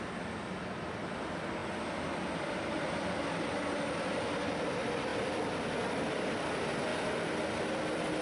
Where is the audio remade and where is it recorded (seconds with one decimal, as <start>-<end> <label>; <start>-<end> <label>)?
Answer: 0.0-5.1 recorded; 5.1-5.6 remade; 5.6-8.2 recorded